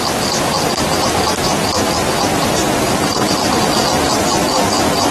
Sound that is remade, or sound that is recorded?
recorded